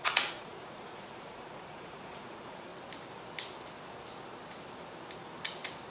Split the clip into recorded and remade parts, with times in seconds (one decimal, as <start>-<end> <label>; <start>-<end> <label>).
0.0-2.7 remade; 2.7-5.9 recorded